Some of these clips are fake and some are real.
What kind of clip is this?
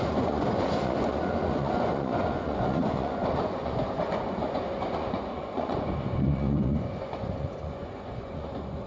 fake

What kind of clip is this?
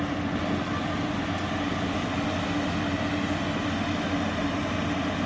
real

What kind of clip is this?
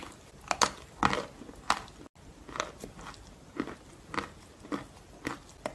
real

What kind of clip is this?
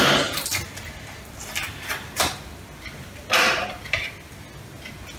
real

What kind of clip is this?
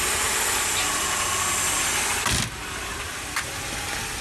real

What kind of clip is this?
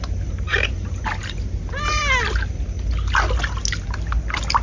real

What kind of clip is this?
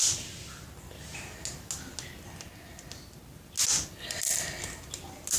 real